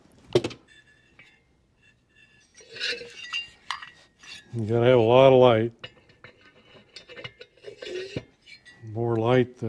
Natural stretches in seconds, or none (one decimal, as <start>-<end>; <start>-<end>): 0.0-9.7